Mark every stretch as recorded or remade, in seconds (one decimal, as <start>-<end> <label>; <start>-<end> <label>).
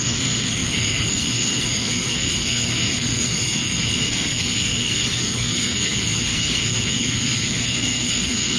0.0-8.6 remade